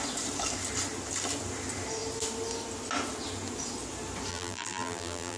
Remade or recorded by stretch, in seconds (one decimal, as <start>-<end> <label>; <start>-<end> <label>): 0.0-4.3 recorded; 4.3-5.4 remade